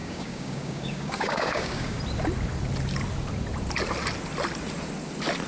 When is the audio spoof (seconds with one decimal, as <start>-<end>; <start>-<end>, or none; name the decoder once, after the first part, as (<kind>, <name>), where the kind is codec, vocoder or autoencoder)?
0.0-2.0 (codec, DAC)